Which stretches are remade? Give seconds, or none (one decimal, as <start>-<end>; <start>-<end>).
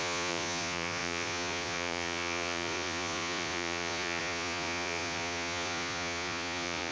0.0-6.9